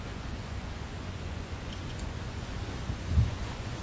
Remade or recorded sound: remade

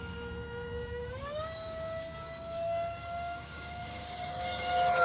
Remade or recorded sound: remade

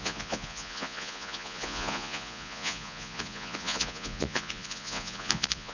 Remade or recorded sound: remade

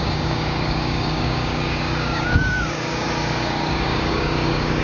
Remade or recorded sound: remade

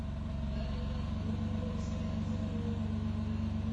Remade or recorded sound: recorded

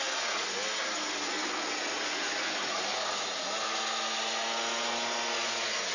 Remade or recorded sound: recorded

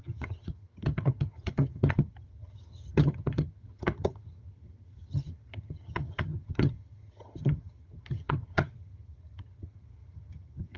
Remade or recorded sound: remade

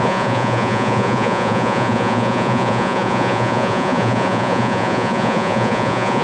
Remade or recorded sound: remade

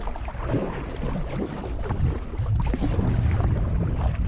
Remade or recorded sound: remade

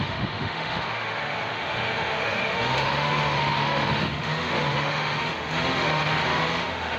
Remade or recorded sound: remade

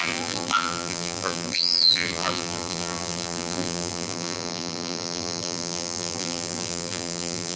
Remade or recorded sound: remade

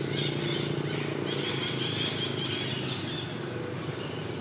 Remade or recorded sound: recorded